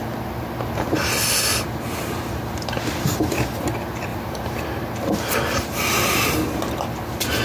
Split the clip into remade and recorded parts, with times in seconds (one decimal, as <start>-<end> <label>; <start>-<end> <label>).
0.0-4.1 recorded; 4.1-4.6 remade; 4.6-7.4 recorded